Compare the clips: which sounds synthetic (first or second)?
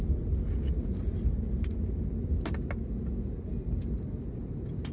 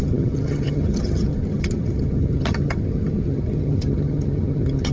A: second